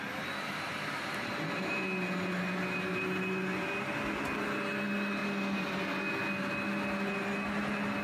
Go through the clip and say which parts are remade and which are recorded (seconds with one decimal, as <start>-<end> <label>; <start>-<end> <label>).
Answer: 0.0-8.0 recorded